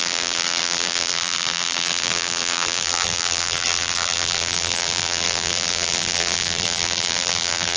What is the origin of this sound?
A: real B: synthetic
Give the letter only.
B